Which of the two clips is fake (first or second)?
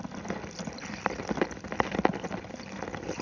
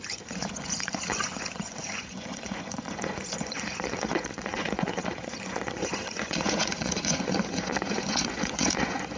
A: second